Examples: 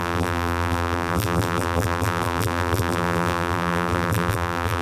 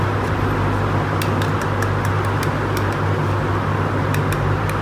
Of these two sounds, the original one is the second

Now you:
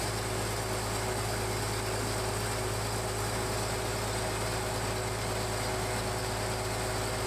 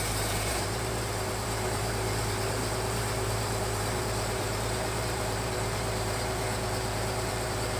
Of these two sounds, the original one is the first